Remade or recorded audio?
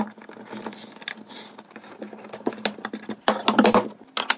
recorded